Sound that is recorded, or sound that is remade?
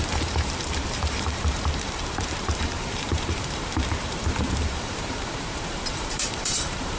remade